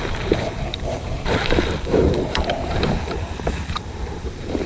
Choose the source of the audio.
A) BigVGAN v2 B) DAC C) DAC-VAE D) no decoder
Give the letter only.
A